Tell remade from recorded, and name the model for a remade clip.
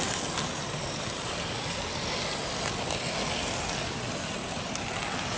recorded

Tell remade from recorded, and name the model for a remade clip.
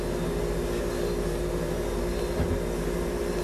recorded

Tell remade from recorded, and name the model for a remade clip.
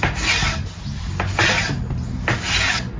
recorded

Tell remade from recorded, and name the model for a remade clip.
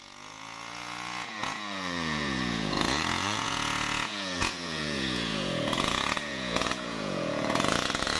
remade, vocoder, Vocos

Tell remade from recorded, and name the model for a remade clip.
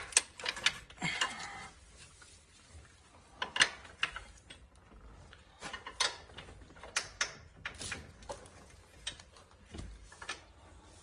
recorded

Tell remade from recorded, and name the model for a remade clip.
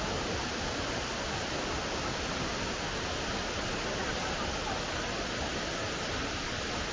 recorded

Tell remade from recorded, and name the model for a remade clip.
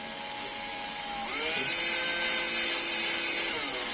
recorded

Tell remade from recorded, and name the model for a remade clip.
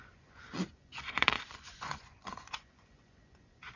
remade, vocoder, Vocos